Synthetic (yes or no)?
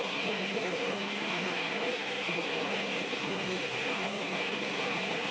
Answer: yes